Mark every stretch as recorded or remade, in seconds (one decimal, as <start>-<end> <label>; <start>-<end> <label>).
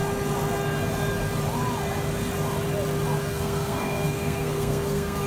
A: 0.0-3.2 recorded; 3.2-5.3 remade